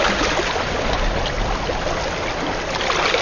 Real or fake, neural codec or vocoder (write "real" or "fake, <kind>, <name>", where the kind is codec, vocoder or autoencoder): real